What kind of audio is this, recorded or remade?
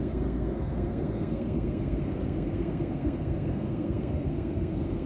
remade